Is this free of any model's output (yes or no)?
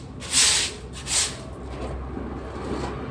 yes